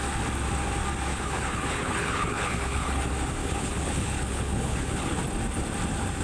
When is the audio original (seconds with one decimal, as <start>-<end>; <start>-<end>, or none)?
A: 0.0-1.1; 3.0-3.4; 5.2-6.2

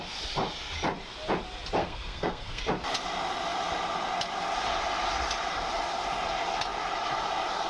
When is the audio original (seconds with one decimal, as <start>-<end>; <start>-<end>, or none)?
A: 0.0-1.8; 2.6-7.7

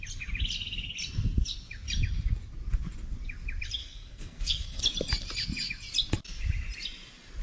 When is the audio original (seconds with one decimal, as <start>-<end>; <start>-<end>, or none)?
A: 0.0-3.8; 4.8-7.4

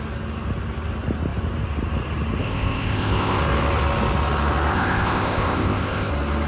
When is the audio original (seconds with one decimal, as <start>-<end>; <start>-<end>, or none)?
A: 0.0-2.4; 3.4-4.7; 6.1-6.5

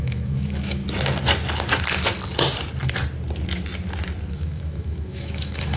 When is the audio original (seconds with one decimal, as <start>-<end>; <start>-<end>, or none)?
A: 0.8-4.3

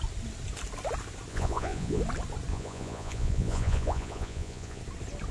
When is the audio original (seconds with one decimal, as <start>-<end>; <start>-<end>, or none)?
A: 0.0-1.3; 2.0-2.5; 4.8-5.3

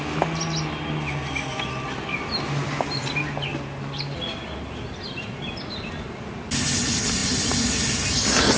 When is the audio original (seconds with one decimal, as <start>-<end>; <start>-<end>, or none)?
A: 0.0-8.6